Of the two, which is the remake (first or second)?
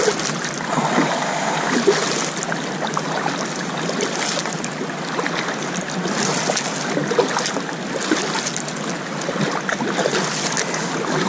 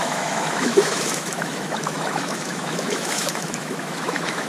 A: second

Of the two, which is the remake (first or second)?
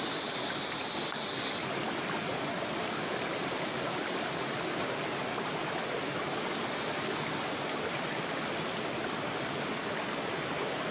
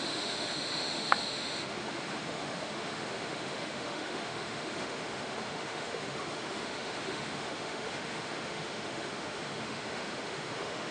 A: second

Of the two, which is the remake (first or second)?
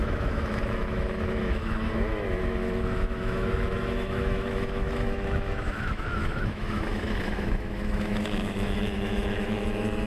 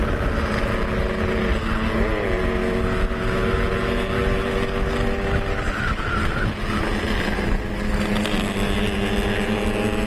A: first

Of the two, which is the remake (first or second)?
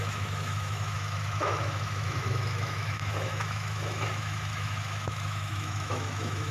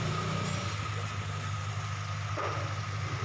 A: first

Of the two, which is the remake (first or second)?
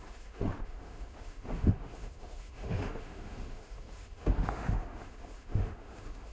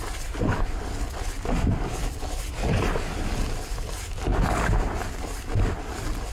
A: first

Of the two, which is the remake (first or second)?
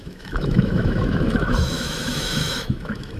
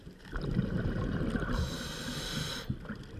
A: first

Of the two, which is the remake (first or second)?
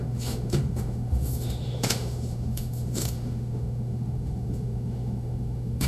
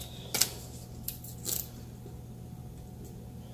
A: first